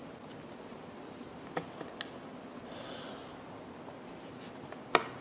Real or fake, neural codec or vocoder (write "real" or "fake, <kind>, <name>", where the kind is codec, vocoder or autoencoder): real